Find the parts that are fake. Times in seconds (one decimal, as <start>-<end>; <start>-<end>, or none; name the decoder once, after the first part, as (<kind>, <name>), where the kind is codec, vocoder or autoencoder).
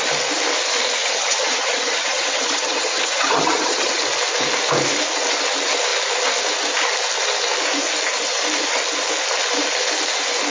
1.0-4.0 (vocoder, HiFi-GAN)